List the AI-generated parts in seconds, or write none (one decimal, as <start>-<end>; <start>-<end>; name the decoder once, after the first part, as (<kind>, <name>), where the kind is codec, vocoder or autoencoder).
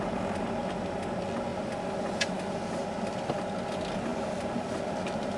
none